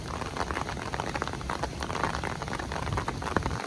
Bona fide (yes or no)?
yes